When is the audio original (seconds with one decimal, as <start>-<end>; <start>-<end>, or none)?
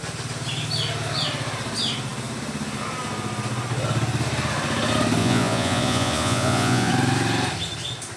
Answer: 0.0-5.2; 6.9-8.2